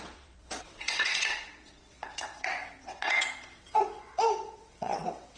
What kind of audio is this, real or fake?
fake